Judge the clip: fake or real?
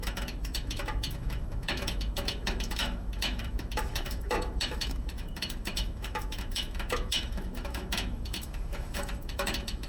fake